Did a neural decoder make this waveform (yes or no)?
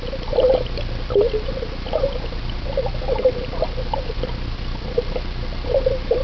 no